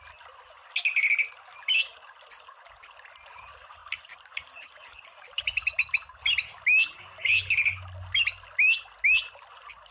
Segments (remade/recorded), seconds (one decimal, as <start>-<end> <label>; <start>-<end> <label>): 0.0-9.9 recorded